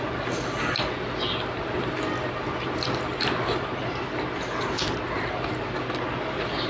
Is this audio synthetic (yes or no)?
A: no